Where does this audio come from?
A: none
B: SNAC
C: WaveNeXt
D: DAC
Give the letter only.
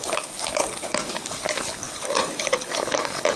D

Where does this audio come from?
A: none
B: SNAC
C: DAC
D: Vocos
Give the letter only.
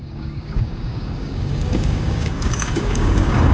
C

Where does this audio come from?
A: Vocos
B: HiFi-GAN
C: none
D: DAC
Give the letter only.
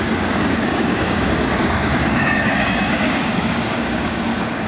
D